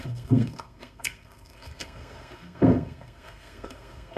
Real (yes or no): no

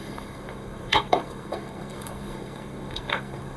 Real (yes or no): no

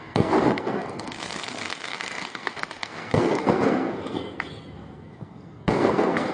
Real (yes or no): no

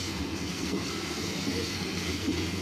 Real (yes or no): no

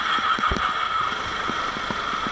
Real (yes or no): yes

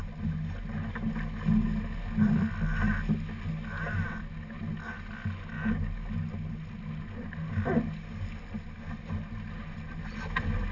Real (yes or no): yes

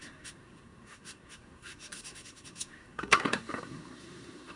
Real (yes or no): no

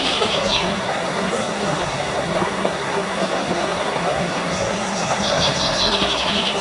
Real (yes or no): no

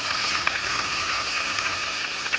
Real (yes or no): no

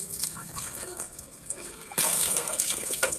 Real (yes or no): no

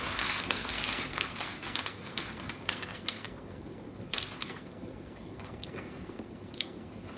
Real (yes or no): no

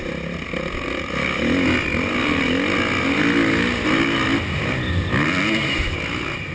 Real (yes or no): yes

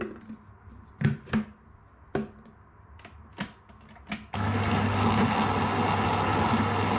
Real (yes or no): yes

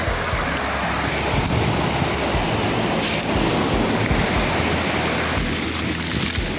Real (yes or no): yes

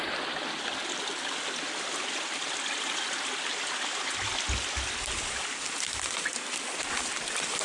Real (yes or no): yes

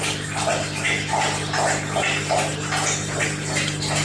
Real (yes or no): yes